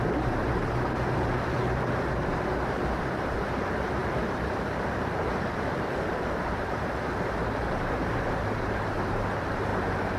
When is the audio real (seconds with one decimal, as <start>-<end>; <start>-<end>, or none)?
9.7-10.2